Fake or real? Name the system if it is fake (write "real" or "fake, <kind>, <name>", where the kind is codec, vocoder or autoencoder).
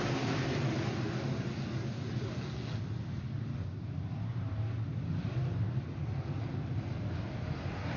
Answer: real